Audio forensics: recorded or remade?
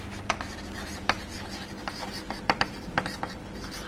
remade